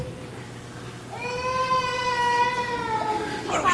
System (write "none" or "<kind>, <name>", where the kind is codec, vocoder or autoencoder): none